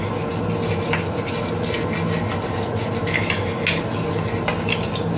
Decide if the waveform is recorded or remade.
recorded